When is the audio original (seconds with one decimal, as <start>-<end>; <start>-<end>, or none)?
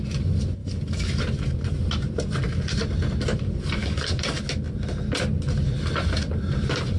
0.0-0.6; 1.2-3.8; 4.4-7.0